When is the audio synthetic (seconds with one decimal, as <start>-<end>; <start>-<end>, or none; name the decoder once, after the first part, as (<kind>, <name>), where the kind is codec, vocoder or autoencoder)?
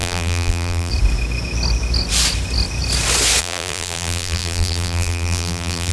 0.0-0.9 (vocoder, BigVGAN v2); 3.4-5.9